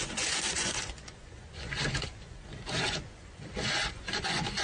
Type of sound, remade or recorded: remade